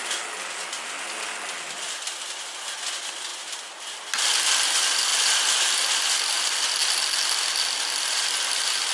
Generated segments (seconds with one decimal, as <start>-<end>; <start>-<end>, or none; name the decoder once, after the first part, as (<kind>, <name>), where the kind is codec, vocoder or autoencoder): none